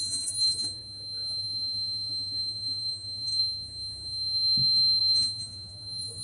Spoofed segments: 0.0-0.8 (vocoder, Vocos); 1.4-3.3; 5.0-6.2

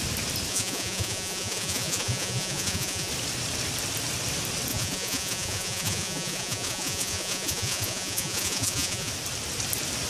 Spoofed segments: 0.5-3.1 (vocoder, Vocos); 4.7-9.1